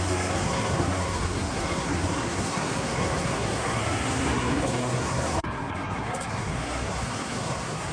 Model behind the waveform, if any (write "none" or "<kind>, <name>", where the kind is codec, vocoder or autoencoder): codec, SNAC